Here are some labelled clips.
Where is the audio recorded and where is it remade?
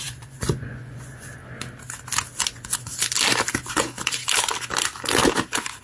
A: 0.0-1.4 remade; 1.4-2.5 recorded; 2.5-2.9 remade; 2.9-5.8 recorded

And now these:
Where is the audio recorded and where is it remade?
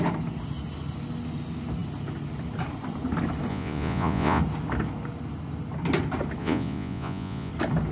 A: 0.0-3.5 recorded; 3.5-4.4 remade; 4.4-6.4 recorded; 6.4-7.5 remade; 7.5-7.9 recorded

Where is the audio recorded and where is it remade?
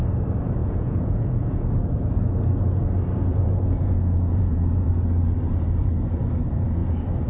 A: 0.0-0.6 recorded; 0.6-1.7 remade; 1.7-3.3 recorded; 3.3-4.9 remade; 4.9-7.3 recorded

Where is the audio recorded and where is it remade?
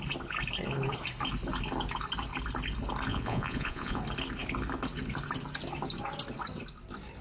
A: 0.0-3.1 recorded; 3.1-4.0 remade; 4.0-7.2 recorded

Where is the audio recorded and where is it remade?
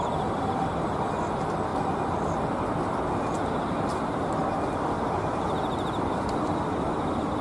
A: 0.0-7.4 recorded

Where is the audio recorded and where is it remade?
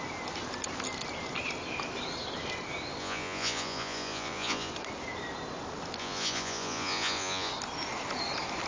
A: 0.0-3.0 recorded; 3.0-4.7 remade; 4.7-6.0 recorded; 6.0-7.5 remade; 7.5-8.7 recorded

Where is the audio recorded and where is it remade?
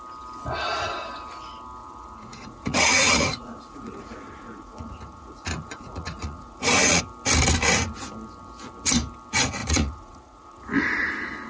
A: 0.0-1.8 recorded; 1.8-7.0 remade; 7.0-9.6 recorded; 9.6-11.1 remade; 11.1-11.5 recorded